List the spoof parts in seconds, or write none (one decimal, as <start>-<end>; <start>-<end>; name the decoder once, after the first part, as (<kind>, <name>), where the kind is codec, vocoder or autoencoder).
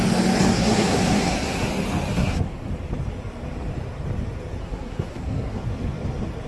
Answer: 0.5-1.7 (codec, SNAC); 2.1-2.7; 4.6-5.6